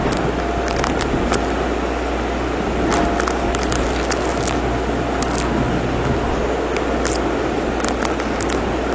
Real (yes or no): yes